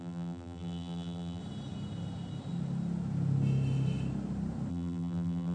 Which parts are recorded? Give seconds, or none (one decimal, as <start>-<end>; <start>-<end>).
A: 1.4-4.7